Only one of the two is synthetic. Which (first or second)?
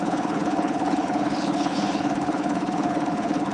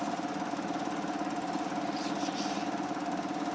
first